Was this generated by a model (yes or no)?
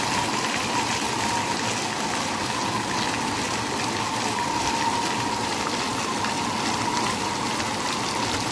no